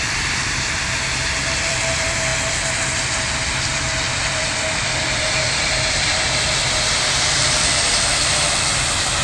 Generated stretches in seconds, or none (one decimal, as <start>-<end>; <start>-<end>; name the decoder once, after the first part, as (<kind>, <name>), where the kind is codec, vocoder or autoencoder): 0.0-9.2 (vocoder, BigVGAN v2)